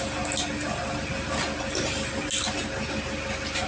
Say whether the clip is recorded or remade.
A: recorded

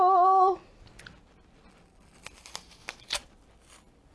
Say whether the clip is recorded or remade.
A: recorded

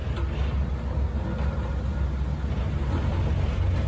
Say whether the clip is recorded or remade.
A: recorded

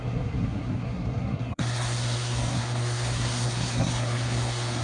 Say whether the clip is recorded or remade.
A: remade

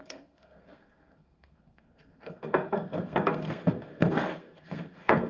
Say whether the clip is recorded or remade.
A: remade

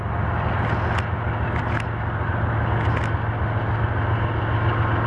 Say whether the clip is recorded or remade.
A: recorded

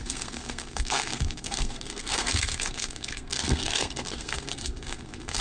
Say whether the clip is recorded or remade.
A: remade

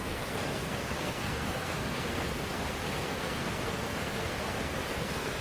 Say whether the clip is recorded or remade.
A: remade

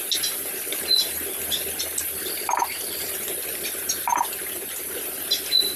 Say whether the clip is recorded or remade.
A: recorded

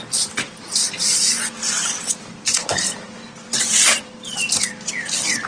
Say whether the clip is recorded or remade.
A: recorded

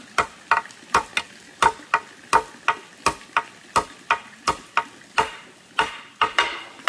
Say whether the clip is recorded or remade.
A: recorded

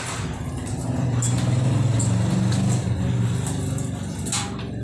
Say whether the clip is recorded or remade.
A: recorded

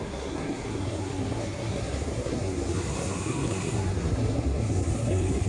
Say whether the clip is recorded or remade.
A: remade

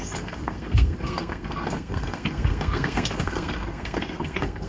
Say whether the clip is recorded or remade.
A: remade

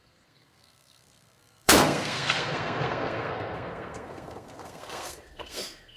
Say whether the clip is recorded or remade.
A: remade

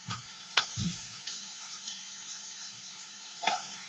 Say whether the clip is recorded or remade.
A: remade